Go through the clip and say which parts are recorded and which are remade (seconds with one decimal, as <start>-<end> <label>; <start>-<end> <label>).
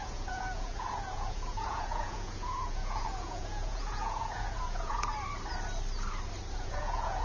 0.0-5.1 remade; 5.1-6.6 recorded; 6.6-7.2 remade